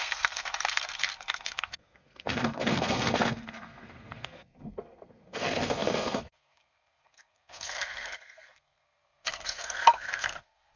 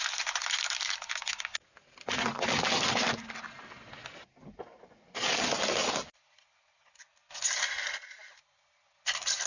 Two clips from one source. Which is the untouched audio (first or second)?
second